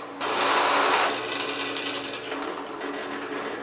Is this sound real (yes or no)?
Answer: yes